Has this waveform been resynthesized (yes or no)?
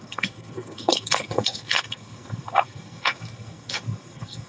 yes